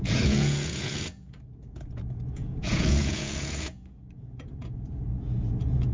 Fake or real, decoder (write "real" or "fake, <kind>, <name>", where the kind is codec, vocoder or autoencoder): fake, vocoder, Vocos